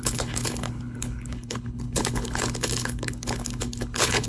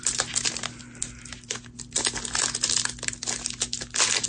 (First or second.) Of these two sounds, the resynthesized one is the first